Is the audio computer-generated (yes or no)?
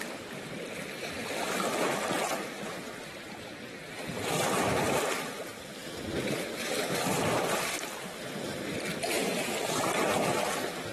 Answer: yes